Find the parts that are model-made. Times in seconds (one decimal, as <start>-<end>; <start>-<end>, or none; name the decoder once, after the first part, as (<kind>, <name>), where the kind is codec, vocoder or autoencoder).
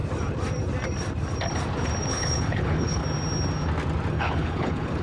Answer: 2.1-3.0 (codec, HILCodec); 4.1-5.0